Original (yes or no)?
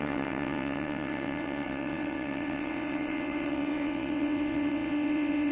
no